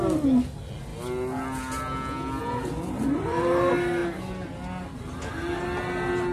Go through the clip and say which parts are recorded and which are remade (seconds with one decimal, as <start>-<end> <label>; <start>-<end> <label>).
0.0-6.3 recorded